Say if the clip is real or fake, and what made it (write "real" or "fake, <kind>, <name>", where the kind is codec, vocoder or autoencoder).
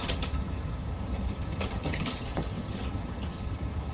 fake, vocoder, HiFi-GAN